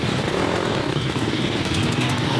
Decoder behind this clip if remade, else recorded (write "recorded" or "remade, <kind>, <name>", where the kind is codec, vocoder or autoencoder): remade, codec, DAC